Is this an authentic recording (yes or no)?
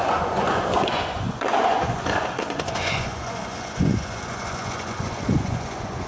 no